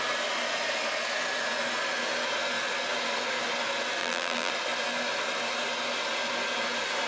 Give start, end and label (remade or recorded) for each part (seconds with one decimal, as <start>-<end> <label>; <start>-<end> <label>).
0.0-4.0 recorded; 4.0-4.5 remade; 4.5-7.1 recorded